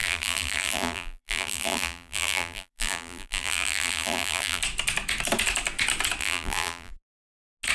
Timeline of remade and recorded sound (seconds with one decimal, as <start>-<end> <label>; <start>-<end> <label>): 0.0-4.6 remade; 4.6-6.2 recorded; 6.2-6.9 remade; 6.9-7.7 recorded

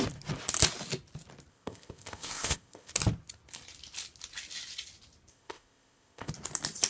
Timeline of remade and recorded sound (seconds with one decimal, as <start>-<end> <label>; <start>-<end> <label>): 0.0-1.5 recorded; 1.5-2.9 remade; 2.9-5.3 recorded; 5.3-6.3 remade; 6.3-6.9 recorded

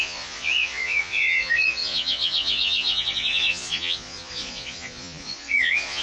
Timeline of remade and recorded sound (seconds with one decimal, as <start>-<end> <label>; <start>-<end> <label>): 0.0-6.0 remade

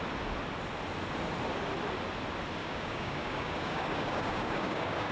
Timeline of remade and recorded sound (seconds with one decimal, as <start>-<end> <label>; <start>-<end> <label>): 0.0-2.6 recorded; 2.6-5.1 remade

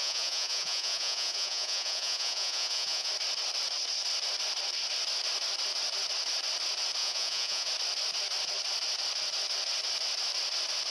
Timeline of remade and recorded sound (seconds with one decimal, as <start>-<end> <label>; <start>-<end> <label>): 0.0-3.1 remade; 3.1-7.0 recorded; 7.0-7.7 remade; 7.7-10.9 recorded